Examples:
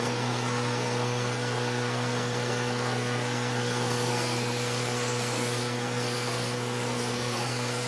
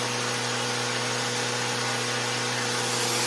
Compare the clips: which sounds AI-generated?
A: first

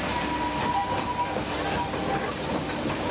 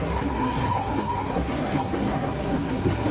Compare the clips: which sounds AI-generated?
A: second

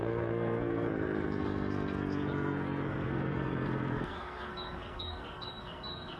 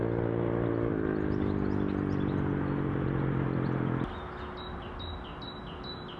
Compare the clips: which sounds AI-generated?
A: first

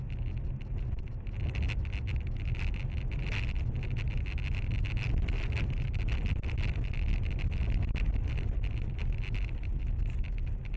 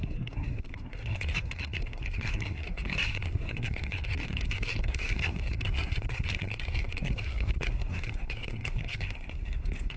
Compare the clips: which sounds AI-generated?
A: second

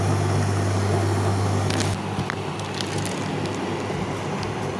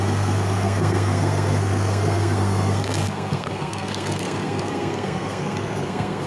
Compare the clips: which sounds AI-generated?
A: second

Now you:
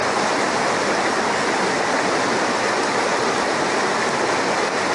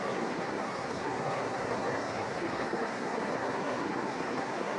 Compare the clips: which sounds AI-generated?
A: second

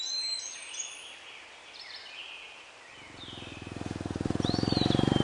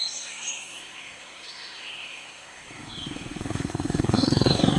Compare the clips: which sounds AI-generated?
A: second